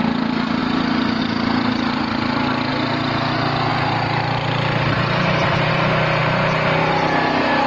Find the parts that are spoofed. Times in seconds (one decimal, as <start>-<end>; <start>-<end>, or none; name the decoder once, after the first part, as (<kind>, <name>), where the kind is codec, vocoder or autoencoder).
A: 0.6-1.2 (vocoder, BigVGAN v2); 3.7-5.7